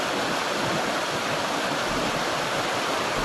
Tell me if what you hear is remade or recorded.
remade